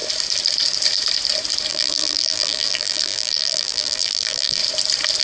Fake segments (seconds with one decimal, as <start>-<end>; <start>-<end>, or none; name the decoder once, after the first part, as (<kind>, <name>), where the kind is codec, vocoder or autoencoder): 1.7-4.6 (vocoder, BigVGAN v2)